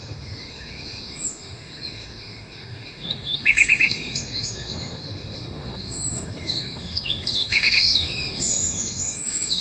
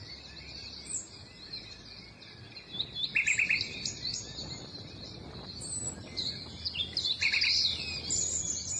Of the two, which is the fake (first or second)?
first